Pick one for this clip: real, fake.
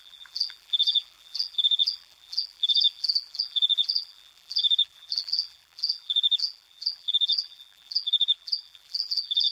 fake